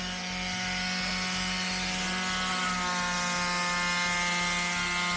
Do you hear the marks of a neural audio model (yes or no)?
no